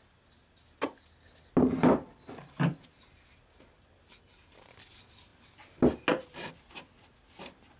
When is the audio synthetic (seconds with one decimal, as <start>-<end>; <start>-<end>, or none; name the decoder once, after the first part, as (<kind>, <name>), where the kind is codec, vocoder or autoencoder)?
none